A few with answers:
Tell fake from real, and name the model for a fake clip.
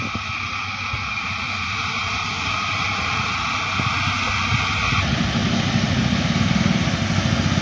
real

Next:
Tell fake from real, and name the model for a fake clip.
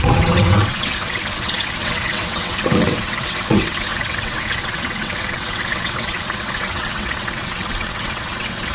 fake, vocoder, WaveNeXt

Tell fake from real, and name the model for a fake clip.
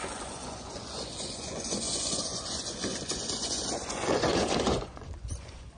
fake, vocoder, Vocos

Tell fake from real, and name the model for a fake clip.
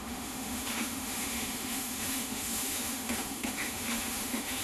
fake, autoencoder, DAC-VAE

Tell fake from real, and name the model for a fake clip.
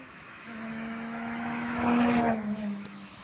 fake, autoencoder, DAC-VAE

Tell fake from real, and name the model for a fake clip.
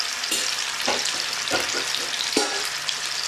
real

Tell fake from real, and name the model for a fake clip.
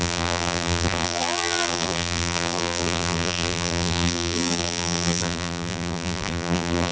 fake, vocoder, BigVGAN v2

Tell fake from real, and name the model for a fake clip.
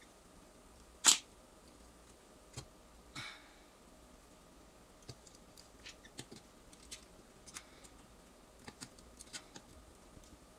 real